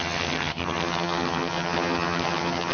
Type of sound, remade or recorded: remade